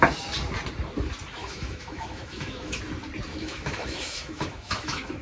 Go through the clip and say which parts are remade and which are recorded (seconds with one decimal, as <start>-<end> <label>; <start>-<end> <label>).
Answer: 0.0-1.4 recorded; 1.4-2.8 remade; 2.8-3.3 recorded; 3.3-5.2 remade